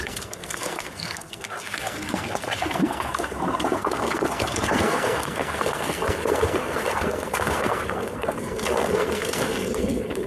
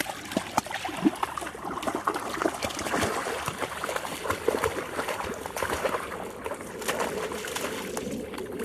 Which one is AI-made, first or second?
first